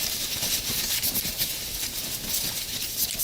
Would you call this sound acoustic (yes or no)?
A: yes